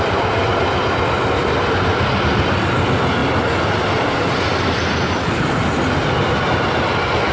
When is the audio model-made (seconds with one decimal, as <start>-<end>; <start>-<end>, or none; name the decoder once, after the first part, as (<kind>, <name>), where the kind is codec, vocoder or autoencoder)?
none